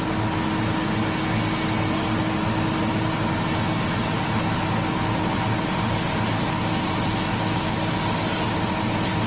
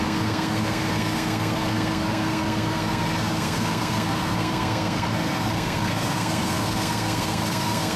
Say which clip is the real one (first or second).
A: first